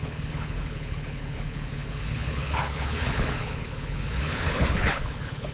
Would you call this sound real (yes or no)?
no